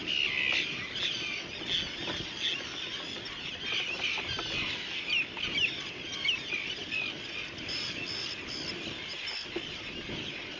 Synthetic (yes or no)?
no